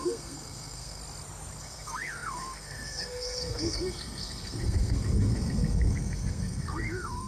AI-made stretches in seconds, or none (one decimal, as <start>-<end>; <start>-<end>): 0.0-1.0; 1.6-7.3